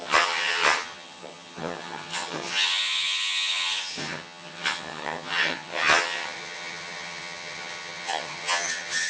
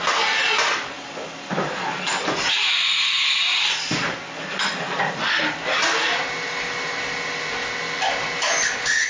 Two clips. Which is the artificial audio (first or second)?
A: first